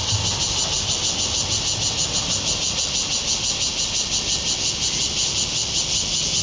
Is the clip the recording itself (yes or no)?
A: yes